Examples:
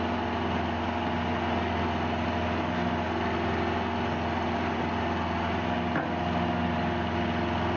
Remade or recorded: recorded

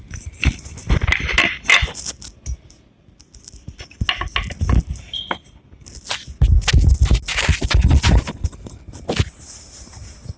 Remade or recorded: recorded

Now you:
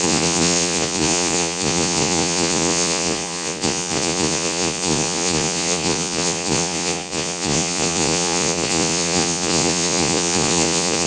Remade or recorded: remade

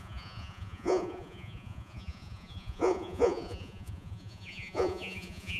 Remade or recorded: remade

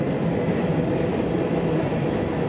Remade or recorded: recorded